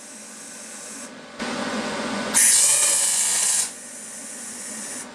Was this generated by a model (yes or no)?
yes